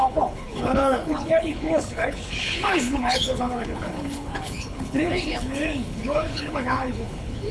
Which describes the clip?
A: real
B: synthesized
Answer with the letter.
B